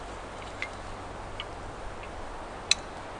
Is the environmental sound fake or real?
real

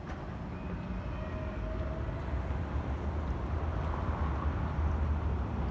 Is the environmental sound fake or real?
real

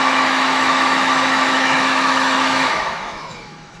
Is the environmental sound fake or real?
fake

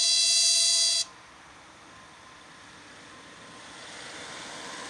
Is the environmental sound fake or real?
real